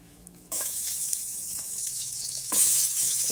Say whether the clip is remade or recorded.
remade